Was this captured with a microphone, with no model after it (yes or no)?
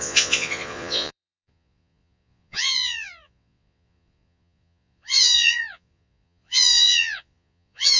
no